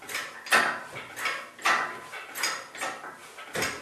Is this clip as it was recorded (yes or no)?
yes